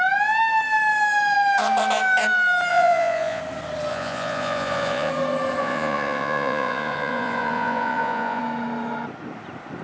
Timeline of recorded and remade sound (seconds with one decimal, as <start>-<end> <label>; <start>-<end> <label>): 0.0-2.7 recorded; 2.7-3.4 remade; 3.4-3.9 recorded; 3.9-5.1 remade; 5.1-5.6 recorded; 5.6-8.4 remade; 8.4-9.8 recorded